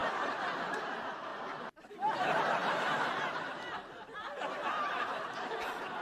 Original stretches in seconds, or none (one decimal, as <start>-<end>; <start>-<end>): 1.3-1.9